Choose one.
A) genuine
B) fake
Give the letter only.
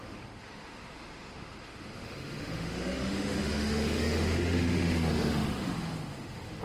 B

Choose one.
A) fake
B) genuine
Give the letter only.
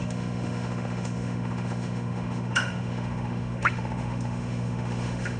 A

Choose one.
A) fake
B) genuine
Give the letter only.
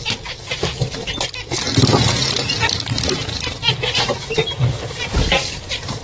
B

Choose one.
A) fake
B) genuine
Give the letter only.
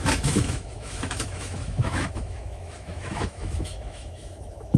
A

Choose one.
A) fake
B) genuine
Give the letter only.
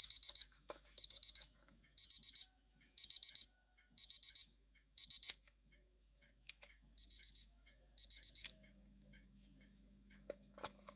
A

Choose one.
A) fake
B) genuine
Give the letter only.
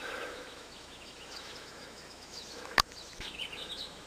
A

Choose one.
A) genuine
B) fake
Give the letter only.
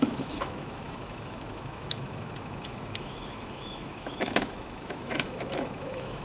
B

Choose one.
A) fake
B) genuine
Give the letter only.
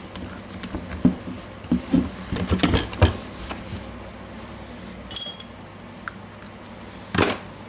B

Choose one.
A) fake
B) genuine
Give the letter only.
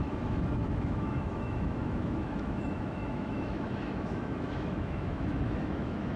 A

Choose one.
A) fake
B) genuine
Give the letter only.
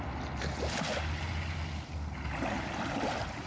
B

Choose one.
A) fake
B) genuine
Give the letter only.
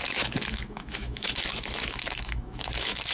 A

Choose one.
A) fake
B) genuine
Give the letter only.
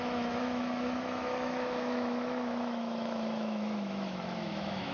A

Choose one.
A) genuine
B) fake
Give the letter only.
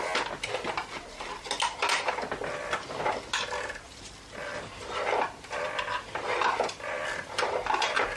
A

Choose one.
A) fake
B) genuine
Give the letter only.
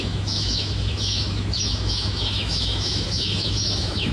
A